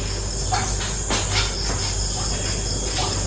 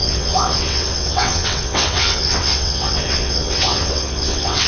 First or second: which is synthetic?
second